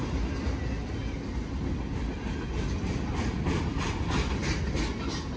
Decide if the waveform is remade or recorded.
recorded